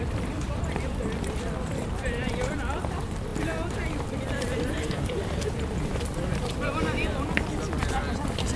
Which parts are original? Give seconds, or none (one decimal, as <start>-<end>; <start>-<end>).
none